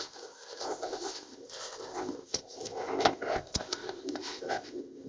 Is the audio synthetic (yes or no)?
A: yes